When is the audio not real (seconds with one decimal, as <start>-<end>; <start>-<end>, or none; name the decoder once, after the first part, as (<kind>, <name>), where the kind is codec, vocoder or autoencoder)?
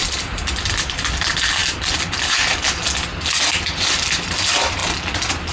0.0-0.5 (vocoder, BigVGAN v2)